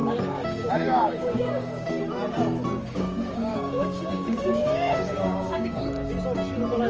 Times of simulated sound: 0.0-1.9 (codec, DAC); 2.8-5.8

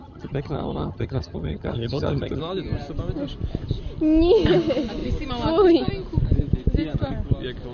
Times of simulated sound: 0.0-2.4 (vocoder, HiFi-GAN)

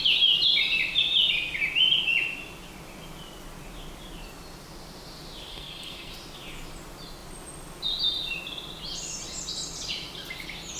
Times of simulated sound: 5.5-6.1 (codec, SNAC)

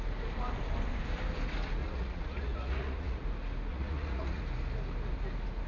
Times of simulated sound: 1.8-3.2 (vocoder, Vocos); 3.7-4.4